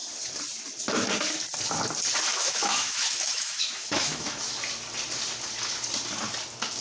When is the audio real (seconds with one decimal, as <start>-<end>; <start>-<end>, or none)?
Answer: 0.0-2.3; 4.5-6.8